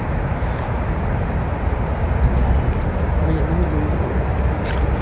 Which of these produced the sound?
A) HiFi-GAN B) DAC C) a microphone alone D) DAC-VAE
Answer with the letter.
C